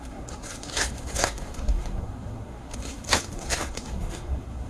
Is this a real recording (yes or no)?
no